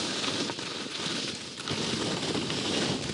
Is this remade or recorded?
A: recorded